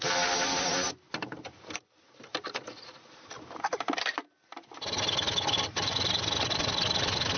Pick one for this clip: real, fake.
real